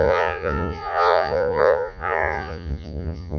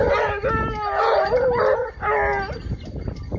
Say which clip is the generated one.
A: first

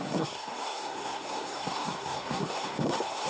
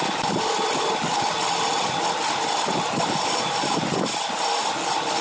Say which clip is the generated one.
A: first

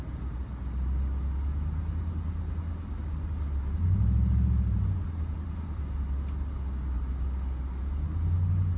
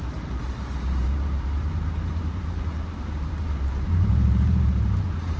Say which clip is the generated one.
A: second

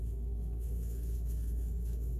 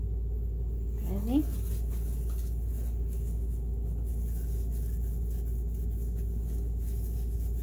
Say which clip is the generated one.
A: first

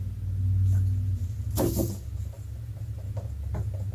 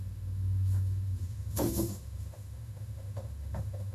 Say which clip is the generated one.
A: second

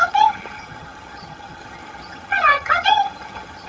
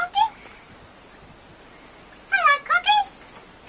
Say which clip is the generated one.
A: first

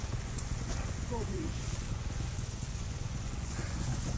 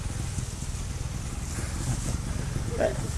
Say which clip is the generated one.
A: first